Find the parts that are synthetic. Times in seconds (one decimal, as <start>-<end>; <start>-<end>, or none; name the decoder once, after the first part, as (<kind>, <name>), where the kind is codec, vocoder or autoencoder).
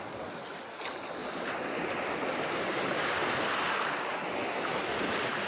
none